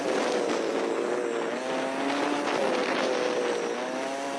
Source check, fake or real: real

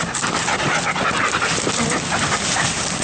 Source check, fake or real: real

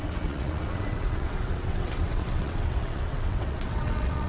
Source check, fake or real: fake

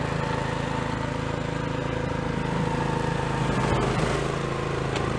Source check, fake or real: real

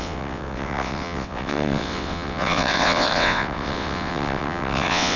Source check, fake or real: fake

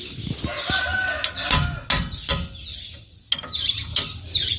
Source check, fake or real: real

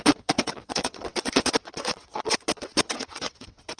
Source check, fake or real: fake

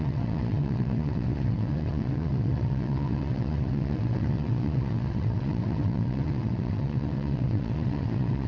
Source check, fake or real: fake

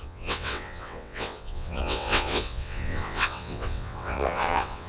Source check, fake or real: fake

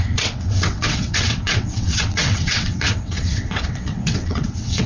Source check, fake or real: fake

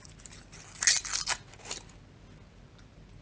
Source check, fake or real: real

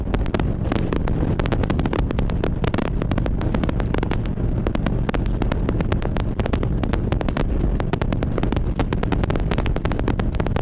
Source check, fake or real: real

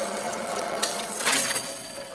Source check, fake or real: fake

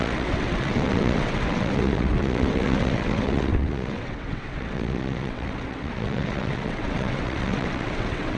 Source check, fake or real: fake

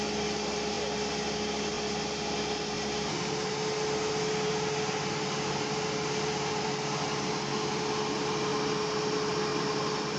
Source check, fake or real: real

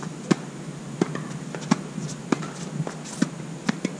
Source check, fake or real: real